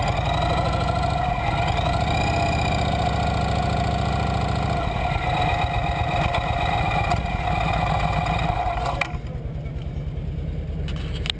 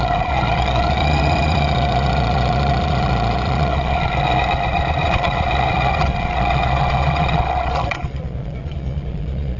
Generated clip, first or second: second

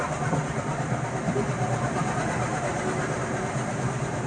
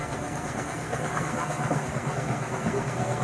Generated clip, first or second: second